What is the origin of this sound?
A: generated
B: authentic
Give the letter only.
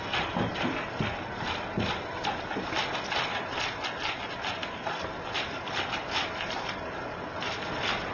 B